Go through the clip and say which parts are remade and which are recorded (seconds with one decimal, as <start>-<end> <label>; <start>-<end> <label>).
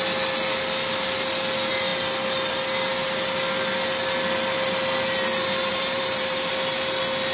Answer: 0.0-5.7 recorded; 5.7-6.5 remade; 6.5-7.3 recorded